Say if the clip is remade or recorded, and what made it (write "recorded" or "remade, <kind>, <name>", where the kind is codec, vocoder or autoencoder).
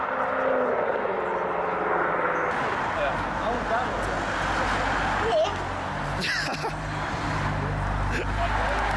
recorded